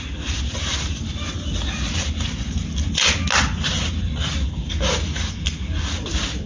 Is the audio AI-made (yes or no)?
no